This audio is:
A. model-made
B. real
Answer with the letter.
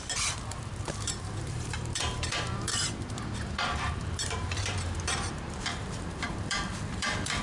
A